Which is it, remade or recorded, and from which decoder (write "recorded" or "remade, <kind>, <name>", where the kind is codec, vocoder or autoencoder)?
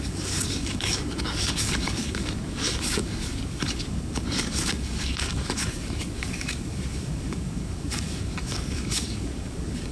remade, codec, DAC